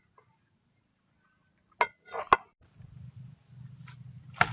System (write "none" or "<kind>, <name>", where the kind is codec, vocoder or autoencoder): none